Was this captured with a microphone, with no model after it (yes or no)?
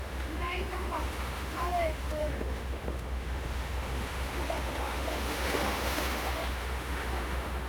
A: no